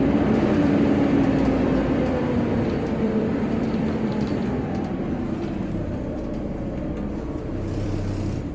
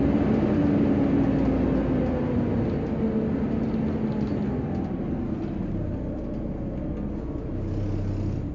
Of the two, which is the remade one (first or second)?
first